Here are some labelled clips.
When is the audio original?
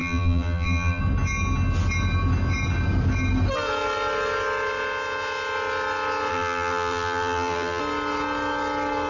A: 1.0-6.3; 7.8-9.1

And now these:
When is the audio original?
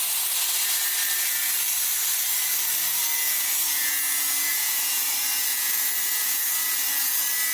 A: 0.0-4.5; 5.1-5.5; 6.4-7.5